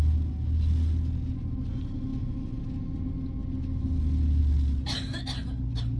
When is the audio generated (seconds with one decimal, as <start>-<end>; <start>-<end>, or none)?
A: none